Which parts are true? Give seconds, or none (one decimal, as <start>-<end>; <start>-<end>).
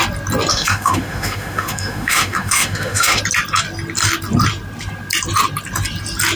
0.0-0.5; 3.2-6.4